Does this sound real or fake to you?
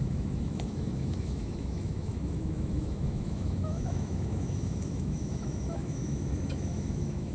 fake